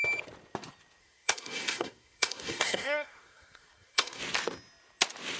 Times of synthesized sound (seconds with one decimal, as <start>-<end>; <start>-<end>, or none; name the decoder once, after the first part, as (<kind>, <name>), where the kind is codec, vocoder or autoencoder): 1.0-4.2 (codec, SNAC)